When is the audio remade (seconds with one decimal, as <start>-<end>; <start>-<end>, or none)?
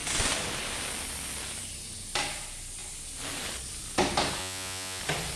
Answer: 4.4-5.0